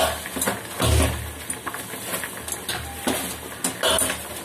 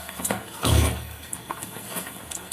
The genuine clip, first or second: first